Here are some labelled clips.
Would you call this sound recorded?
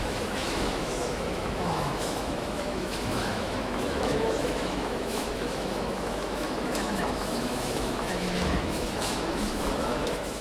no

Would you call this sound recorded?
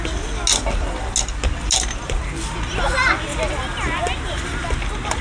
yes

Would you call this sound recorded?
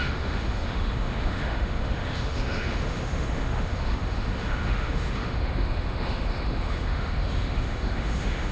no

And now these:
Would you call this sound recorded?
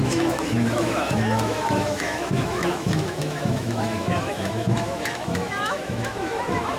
no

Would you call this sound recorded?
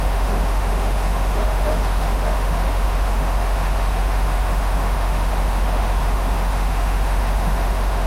no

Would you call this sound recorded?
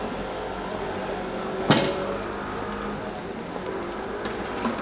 yes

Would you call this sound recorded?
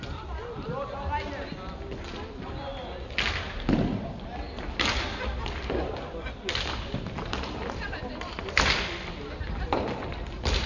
yes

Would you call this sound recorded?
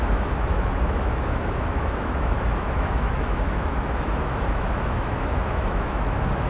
no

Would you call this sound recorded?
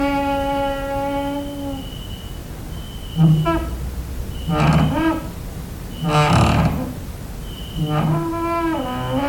yes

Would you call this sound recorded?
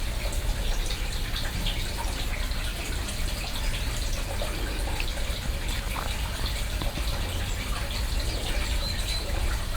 yes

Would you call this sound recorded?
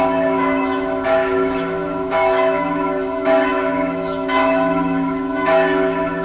no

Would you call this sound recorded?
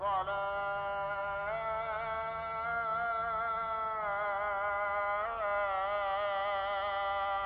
yes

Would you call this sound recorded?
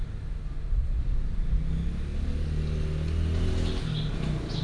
yes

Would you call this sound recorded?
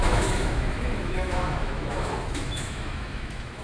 no